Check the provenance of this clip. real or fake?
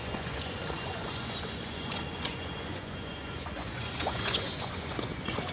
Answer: fake